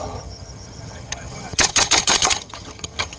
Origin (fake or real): fake